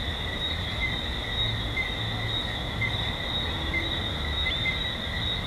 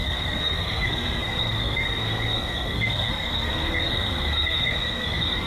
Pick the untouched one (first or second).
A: first